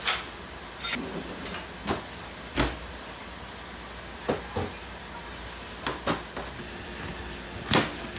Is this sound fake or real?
real